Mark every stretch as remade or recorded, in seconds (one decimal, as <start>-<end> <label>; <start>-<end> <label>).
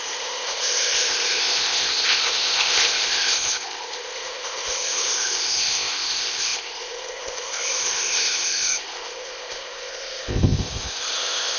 0.0-11.6 remade